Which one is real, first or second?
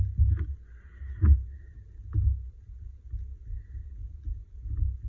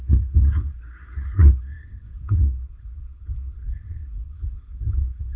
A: first